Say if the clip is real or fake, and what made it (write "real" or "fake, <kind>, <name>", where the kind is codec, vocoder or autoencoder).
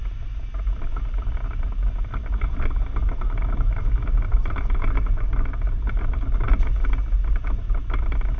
real